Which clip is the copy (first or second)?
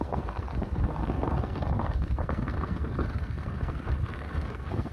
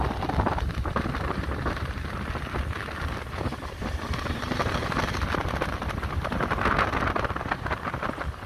first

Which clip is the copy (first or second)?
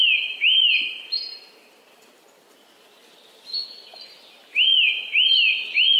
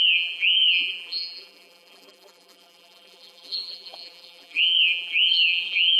second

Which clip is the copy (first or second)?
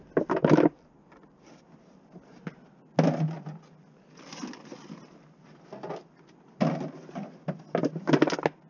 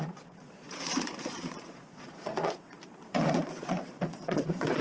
second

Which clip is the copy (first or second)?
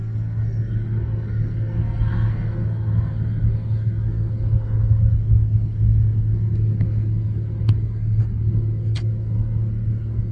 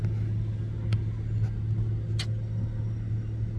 first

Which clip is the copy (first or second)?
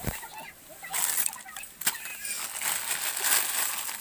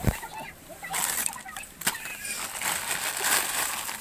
second